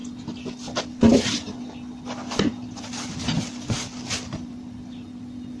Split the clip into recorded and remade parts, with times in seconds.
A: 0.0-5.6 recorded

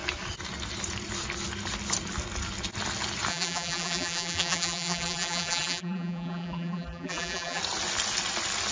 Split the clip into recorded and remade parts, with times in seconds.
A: 0.0-3.3 recorded; 3.3-7.6 remade; 7.6-8.7 recorded

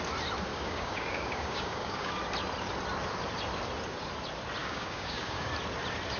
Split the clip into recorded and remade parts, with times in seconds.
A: 0.0-0.5 recorded; 0.5-2.1 remade; 2.1-4.6 recorded; 4.6-5.5 remade; 5.5-6.2 recorded

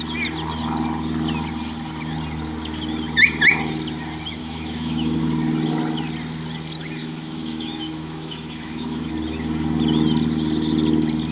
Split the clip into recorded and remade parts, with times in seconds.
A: 0.0-4.4 recorded; 4.4-5.2 remade; 5.2-7.0 recorded; 7.0-9.1 remade; 9.1-11.3 recorded